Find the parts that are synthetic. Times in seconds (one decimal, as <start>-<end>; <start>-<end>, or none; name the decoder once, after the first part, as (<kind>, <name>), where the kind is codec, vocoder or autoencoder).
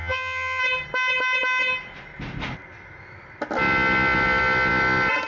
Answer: 0.0-0.6 (vocoder, HiFi-GAN)